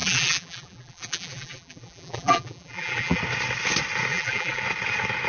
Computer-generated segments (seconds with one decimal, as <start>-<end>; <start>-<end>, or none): 0.0-3.2; 4.1-4.6